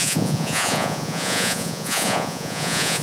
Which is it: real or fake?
fake